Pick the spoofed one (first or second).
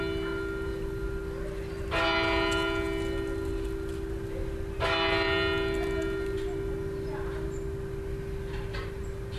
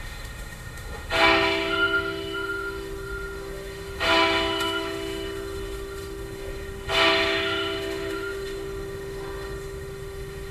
second